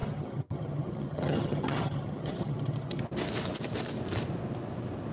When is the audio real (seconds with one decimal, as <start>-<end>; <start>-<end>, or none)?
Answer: 3.0-5.1